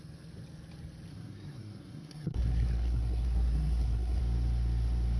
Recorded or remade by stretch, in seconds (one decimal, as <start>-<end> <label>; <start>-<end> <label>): 0.0-1.1 recorded; 1.1-4.2 remade; 4.2-5.2 recorded